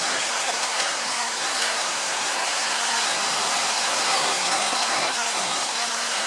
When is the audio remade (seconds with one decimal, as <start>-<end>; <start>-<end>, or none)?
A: 0.0-3.2; 3.7-6.3